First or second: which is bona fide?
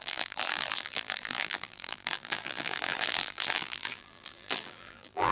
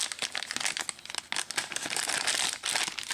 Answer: second